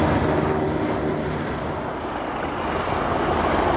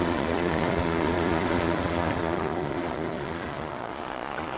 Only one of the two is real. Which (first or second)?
first